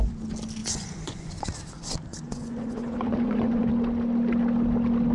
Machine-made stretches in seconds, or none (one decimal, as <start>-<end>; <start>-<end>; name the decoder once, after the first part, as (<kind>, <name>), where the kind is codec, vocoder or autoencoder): 0.6-1.3 (vocoder, Vocos); 2.1-3.7